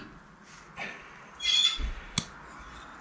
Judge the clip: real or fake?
real